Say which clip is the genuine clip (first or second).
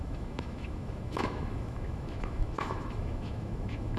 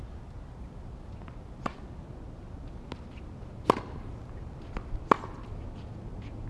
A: second